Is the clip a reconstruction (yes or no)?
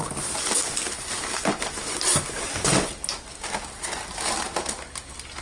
no